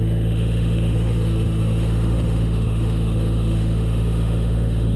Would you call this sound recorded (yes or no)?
no